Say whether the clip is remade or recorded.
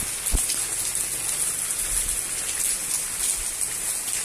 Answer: recorded